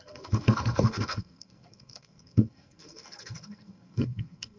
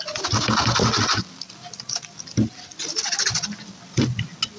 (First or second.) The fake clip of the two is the first